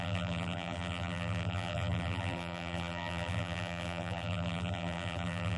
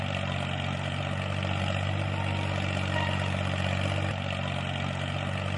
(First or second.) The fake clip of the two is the first